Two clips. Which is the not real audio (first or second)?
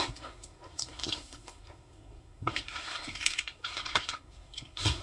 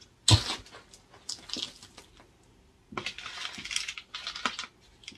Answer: first